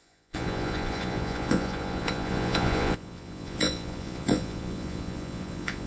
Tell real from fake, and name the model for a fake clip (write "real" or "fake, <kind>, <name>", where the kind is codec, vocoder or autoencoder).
fake, vocoder, Vocos